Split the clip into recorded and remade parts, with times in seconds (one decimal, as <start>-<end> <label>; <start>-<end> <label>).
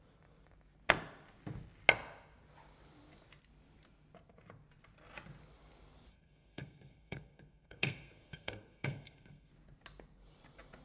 0.0-6.1 recorded; 6.1-9.5 remade; 9.5-10.8 recorded